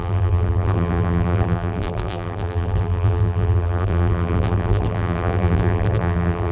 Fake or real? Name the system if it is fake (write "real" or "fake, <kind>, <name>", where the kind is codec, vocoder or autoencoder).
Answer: fake, vocoder, BigVGAN v2